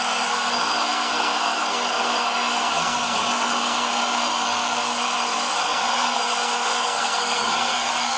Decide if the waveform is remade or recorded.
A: remade